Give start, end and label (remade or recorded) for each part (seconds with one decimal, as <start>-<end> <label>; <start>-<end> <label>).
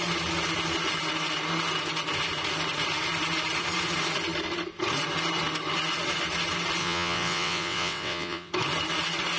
0.0-6.8 recorded; 6.8-8.5 remade; 8.5-9.4 recorded